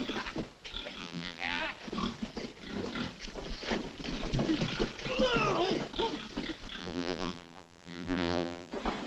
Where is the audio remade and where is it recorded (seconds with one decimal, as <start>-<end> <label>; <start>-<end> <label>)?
0.0-1.0 recorded; 1.0-1.6 remade; 1.6-6.8 recorded; 6.8-8.7 remade; 8.7-9.1 recorded

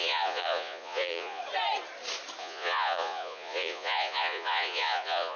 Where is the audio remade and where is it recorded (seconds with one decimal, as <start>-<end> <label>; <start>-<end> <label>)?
0.0-1.4 remade; 1.4-2.4 recorded; 2.4-5.4 remade

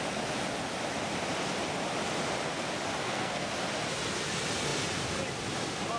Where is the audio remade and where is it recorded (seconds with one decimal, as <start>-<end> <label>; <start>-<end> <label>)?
0.0-3.0 recorded; 3.0-3.5 remade; 3.5-6.0 recorded

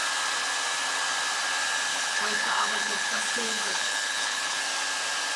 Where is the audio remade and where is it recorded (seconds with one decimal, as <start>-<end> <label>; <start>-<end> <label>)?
0.0-1.9 recorded; 1.9-4.6 remade; 4.6-5.4 recorded

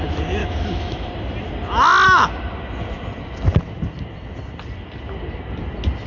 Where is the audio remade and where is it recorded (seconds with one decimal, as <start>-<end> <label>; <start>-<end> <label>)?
0.0-0.4 recorded; 0.4-1.1 remade; 1.1-6.1 recorded

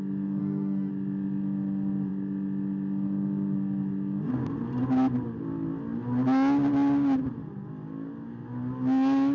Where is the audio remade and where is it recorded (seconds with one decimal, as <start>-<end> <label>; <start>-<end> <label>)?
0.0-0.4 recorded; 0.4-0.9 remade; 0.9-9.3 recorded

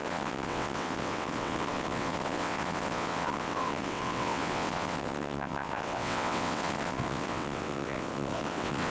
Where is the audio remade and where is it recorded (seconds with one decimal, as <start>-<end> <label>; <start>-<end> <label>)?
0.0-8.9 remade